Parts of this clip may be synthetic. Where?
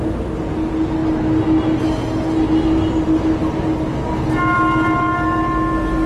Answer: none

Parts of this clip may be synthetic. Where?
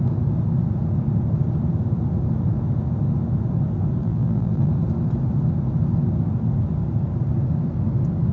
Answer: 4.0-4.7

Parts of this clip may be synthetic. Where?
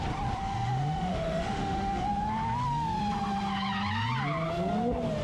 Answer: 0.4-2.1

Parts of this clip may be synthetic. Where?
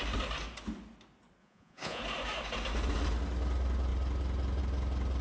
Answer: 1.4-2.0